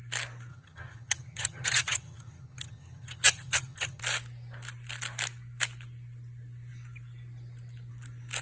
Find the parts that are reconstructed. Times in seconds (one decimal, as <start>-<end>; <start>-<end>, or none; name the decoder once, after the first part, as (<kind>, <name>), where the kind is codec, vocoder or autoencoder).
0.5-4.0 (vocoder, HiFi-GAN)